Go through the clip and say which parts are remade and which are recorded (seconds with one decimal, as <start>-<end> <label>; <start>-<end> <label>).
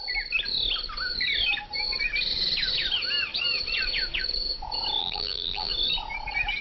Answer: 0.0-5.0 recorded; 5.0-5.7 remade; 5.7-6.6 recorded